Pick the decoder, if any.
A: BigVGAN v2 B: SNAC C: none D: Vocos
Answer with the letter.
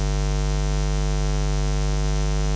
C